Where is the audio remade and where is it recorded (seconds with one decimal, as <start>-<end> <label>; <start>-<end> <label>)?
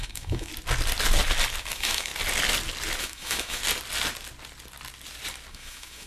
0.0-0.5 remade; 0.5-1.6 recorded; 1.6-2.1 remade; 2.1-3.0 recorded; 3.0-3.6 remade; 3.6-5.5 recorded; 5.5-6.1 remade